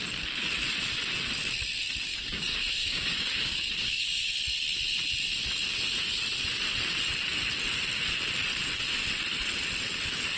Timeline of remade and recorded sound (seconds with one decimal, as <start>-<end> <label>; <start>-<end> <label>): 0.0-2.1 recorded; 2.1-4.3 remade; 4.3-10.4 recorded